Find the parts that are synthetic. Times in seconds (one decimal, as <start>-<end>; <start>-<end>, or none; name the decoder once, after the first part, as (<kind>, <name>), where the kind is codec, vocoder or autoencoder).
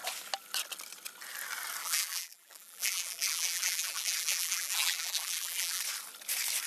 1.8-5.8 (vocoder, BigVGAN v2)